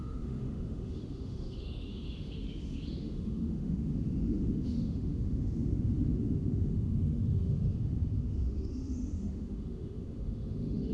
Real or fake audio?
fake